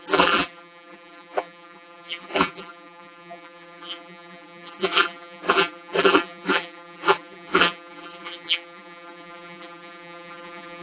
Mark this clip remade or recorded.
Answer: remade